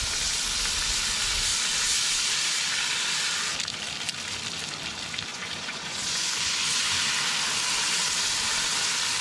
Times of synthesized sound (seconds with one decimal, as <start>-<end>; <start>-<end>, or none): 5.3-6.9